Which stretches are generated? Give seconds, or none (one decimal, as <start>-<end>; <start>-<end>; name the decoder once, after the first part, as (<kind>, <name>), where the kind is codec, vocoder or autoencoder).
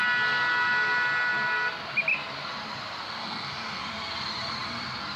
3.2-3.8 (codec, SNAC)